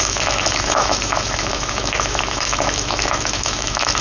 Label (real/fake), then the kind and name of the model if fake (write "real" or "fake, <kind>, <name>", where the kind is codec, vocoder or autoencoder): fake, autoencoder, DAC-VAE